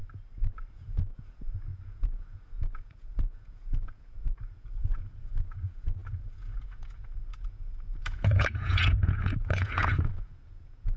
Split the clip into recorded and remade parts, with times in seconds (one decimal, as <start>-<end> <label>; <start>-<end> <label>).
0.0-0.7 recorded; 0.7-11.0 remade

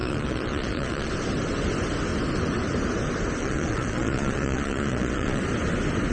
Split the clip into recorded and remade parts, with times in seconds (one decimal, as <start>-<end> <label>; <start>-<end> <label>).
0.0-1.1 remade; 1.1-3.4 recorded; 3.4-5.4 remade; 5.4-6.1 recorded

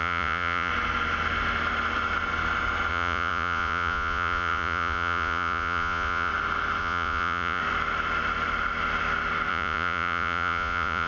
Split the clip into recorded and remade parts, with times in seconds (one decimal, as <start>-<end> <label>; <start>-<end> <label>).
0.0-0.7 remade; 0.7-2.9 recorded; 2.9-6.3 remade; 6.3-6.8 recorded; 6.8-7.6 remade; 7.6-9.5 recorded; 9.5-11.1 remade

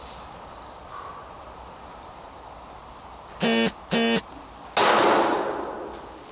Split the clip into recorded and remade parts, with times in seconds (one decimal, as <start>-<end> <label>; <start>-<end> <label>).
0.0-6.3 recorded